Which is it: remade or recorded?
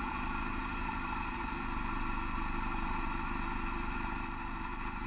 remade